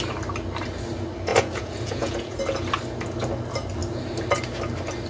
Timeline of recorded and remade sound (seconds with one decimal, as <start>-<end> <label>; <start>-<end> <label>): 0.0-1.3 recorded; 1.3-2.4 remade; 2.4-5.1 recorded